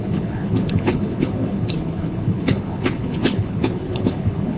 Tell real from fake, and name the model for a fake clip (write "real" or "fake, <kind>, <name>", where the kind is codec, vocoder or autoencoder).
fake, codec, HILCodec